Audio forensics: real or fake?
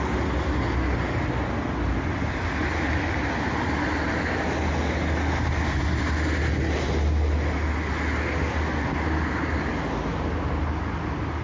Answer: real